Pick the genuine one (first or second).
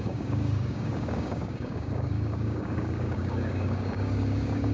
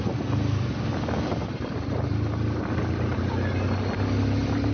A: second